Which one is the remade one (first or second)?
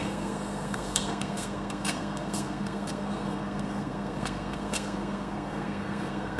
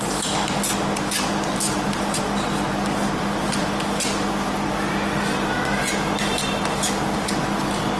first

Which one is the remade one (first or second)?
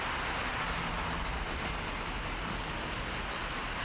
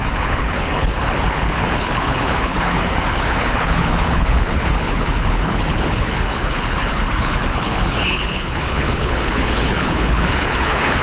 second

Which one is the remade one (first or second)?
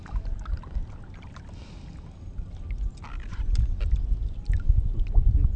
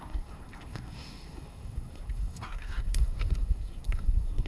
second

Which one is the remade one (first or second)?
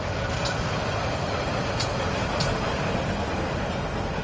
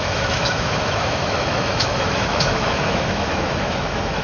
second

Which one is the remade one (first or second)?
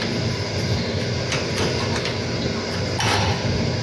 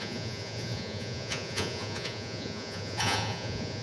second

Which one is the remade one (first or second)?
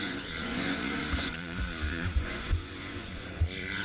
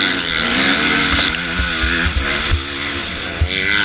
first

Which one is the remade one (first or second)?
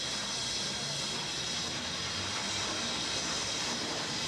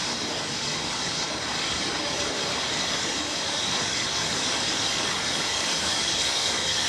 second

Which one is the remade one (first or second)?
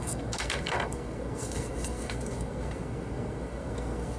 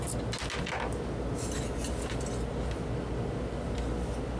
first